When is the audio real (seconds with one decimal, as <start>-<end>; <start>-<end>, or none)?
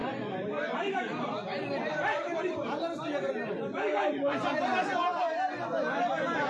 0.0-6.5